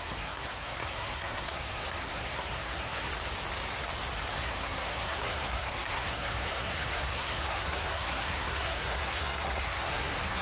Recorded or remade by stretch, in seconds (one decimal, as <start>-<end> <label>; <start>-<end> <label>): 0.0-3.1 remade; 3.1-4.3 recorded; 4.3-10.4 remade